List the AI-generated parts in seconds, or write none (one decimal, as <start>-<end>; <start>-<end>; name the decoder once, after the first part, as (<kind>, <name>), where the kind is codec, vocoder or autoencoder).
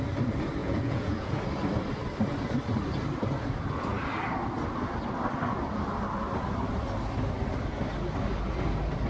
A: 0.6-1.3 (vocoder, Vocos)